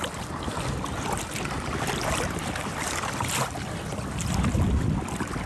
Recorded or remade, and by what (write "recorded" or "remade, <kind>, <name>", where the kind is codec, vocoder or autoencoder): recorded